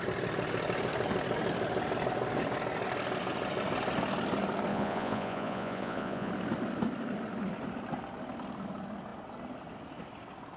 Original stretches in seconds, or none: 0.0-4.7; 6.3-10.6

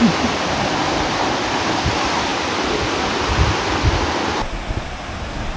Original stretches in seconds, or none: 0.0-5.6